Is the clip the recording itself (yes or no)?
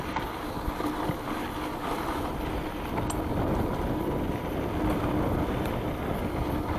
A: yes